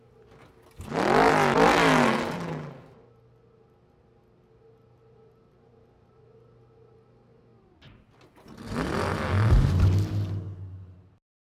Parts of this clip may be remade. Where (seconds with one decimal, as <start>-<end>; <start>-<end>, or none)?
none